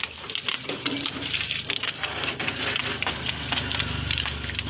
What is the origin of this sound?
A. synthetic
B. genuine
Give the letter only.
B